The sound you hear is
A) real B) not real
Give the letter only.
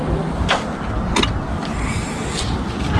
A